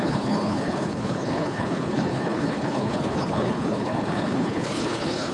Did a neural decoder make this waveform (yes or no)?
yes